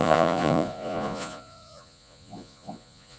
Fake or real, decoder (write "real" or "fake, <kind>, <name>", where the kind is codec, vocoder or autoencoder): fake, vocoder, Vocos